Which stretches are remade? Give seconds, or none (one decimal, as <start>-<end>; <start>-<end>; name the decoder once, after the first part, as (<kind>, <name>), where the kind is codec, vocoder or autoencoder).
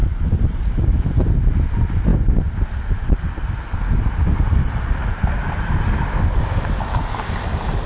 none